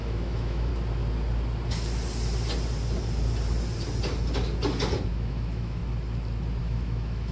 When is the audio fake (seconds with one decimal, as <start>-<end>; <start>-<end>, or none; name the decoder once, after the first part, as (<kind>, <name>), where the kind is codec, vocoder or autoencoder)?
0.0-0.7 (autoencoder, DAC-VAE); 5.1-5.8; 6.6-7.3